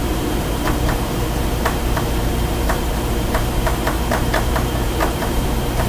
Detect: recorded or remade remade